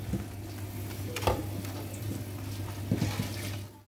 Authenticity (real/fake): real